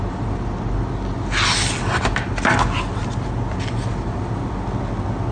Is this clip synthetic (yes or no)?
no